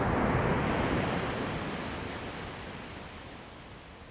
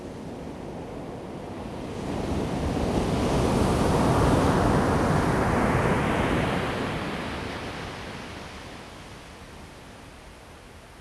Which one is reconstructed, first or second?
first